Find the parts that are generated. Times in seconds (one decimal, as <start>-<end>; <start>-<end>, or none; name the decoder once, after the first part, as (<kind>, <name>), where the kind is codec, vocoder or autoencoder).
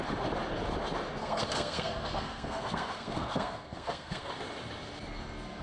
1.2-4.3 (codec, SNAC)